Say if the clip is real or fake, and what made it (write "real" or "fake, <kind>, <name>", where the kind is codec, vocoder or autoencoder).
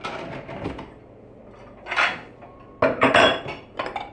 real